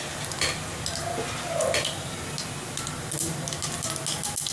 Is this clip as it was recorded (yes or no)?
yes